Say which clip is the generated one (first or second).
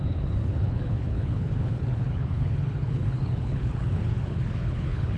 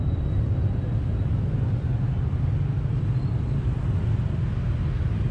first